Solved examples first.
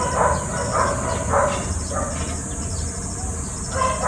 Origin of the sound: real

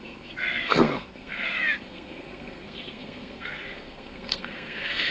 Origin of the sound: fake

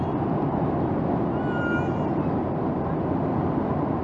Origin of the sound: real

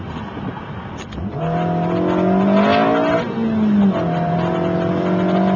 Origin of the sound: real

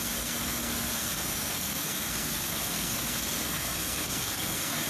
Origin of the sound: fake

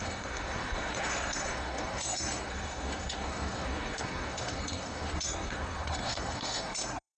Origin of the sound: fake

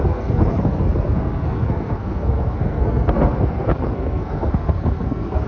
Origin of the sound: fake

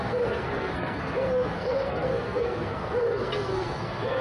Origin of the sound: fake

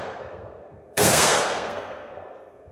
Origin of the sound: fake